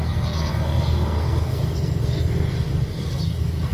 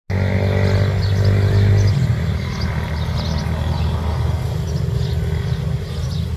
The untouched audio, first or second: second